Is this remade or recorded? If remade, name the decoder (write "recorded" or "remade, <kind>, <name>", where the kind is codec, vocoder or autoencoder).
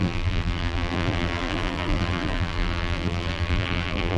remade, vocoder, BigVGAN v2